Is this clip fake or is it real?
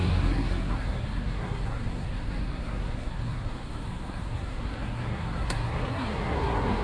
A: fake